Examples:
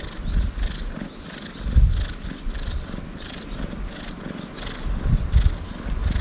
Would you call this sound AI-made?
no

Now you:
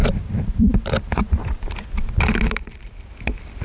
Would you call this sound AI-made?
yes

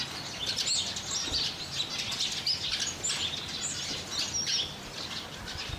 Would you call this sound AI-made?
no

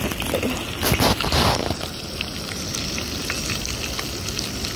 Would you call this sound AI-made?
no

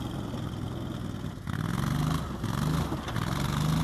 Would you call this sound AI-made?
no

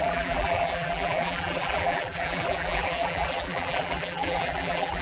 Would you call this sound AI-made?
yes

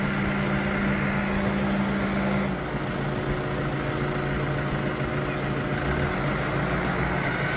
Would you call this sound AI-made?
no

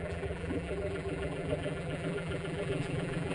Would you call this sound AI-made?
yes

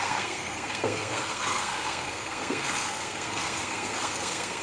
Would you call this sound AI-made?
yes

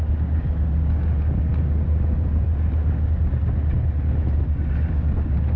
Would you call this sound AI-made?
no